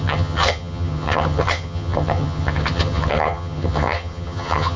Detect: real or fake fake